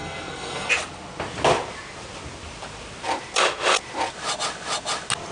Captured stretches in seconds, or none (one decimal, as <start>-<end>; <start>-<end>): 0.7-5.3